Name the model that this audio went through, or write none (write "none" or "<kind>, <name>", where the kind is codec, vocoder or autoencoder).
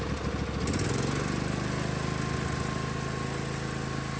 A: none